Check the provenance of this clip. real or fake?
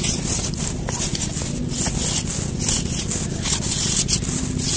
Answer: real